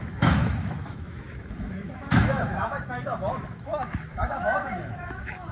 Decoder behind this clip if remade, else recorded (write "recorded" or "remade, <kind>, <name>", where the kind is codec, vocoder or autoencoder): remade, autoencoder, DAC-VAE